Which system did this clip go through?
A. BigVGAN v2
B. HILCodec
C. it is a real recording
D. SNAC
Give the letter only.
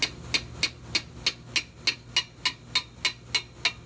C